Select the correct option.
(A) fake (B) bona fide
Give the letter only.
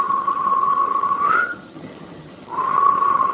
A